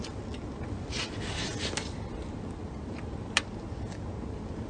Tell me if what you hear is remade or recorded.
recorded